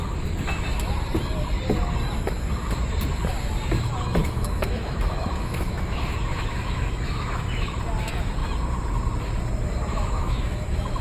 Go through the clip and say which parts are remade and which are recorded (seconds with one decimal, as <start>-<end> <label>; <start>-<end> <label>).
0.0-4.2 recorded; 4.2-7.8 remade; 7.8-9.9 recorded; 9.9-11.0 remade